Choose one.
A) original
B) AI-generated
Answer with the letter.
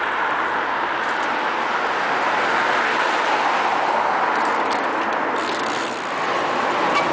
A